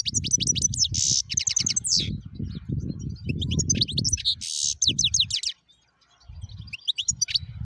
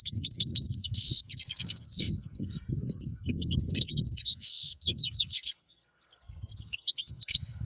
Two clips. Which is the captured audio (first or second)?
first